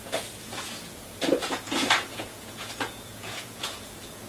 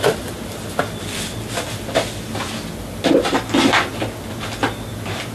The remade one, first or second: first